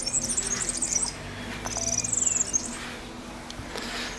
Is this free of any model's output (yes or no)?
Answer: yes